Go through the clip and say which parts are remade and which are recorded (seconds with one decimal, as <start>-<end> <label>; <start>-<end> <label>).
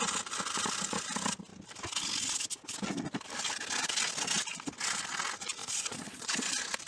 0.0-5.6 recorded; 5.6-6.5 remade; 6.5-6.9 recorded